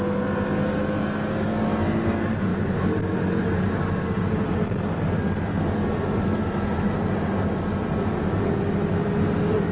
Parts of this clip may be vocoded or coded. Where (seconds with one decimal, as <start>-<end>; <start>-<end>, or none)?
none